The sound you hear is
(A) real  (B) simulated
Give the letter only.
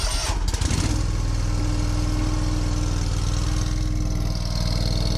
A